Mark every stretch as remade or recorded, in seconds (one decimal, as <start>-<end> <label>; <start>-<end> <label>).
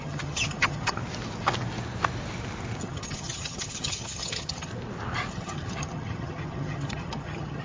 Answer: 0.0-1.0 remade; 1.0-2.8 recorded; 2.8-4.7 remade; 4.7-5.3 recorded; 5.3-7.6 remade